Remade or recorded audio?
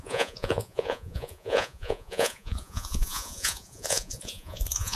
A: remade